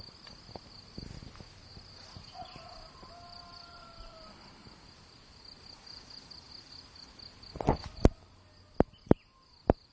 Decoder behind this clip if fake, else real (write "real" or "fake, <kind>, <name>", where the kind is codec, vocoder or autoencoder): real